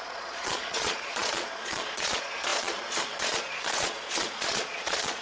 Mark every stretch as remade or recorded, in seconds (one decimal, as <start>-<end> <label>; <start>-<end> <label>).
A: 0.0-5.2 remade